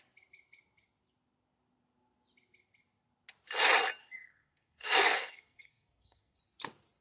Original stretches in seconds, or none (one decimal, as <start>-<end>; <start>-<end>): 0.0-4.0; 6.4-7.0